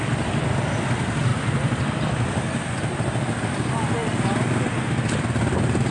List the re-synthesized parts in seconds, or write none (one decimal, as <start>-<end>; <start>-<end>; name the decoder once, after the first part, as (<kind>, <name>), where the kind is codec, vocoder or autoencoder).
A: none